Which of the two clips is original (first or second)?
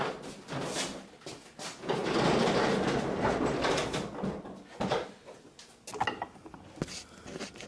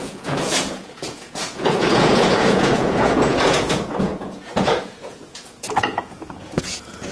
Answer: first